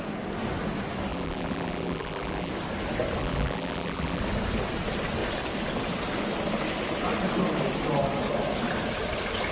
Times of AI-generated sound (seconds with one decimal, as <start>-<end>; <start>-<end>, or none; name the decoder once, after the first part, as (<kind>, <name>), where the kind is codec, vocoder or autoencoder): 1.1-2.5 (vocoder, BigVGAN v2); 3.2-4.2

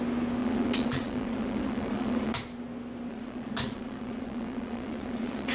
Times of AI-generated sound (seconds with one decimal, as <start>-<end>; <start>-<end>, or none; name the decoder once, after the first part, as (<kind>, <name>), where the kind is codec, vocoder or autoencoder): 0.4-2.3 (vocoder, Vocos); 3.1-5.5

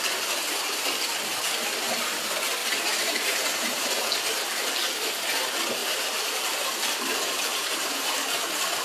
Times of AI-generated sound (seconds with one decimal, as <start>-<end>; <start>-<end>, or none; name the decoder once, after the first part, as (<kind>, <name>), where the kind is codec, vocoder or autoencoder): 2.6-4.0 (vocoder, BigVGAN v2); 5.8-6.6; 7.5-8.4

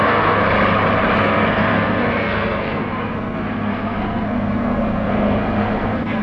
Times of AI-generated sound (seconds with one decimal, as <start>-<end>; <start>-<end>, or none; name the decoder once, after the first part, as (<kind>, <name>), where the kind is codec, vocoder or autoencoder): 0.0-0.4 (codec, SNAC); 1.2-6.2

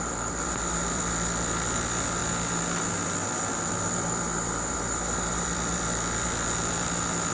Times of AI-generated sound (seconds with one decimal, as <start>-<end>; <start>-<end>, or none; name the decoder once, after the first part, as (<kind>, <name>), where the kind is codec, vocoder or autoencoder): 0.0-7.3 (vocoder, BigVGAN v2)

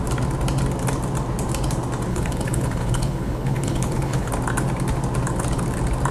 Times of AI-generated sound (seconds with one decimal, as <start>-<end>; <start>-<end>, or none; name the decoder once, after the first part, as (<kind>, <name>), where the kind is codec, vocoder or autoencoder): 2.1-4.3 (codec, HILCodec)